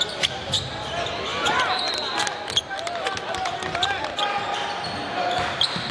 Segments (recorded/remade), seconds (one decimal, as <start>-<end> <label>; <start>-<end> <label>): 0.0-5.9 recorded

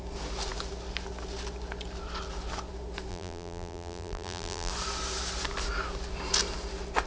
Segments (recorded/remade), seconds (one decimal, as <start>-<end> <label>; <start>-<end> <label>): 0.0-3.1 recorded; 3.1-4.7 remade; 4.7-7.1 recorded